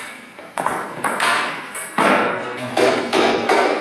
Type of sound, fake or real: fake